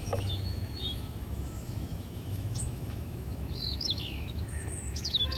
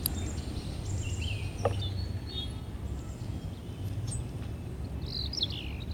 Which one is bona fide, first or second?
second